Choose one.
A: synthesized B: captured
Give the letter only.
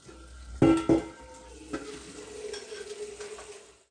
B